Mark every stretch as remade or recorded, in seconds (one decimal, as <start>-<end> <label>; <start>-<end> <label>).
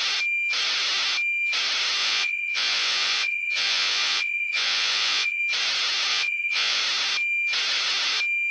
0.0-2.0 recorded; 2.0-5.4 remade; 5.4-6.1 recorded; 6.1-6.8 remade; 6.8-8.5 recorded